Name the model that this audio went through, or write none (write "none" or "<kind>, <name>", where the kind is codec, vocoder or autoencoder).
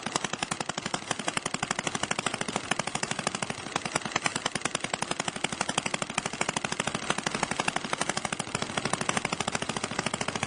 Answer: none